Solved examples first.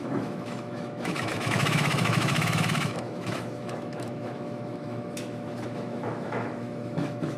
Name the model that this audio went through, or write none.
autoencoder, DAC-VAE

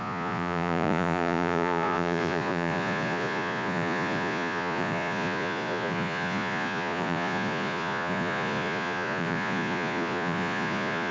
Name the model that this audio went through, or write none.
vocoder, Vocos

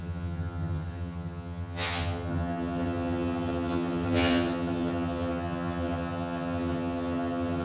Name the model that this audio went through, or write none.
vocoder, HiFi-GAN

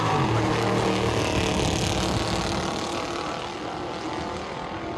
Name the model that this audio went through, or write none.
none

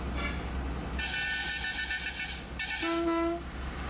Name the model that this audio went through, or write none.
none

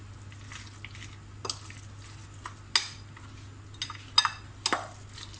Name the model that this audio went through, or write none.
none